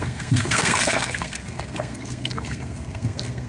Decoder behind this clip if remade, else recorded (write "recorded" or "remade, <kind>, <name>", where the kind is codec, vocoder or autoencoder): remade, codec, SNAC